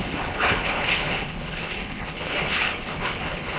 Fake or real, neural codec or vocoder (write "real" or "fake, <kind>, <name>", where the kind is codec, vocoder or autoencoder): fake, codec, HILCodec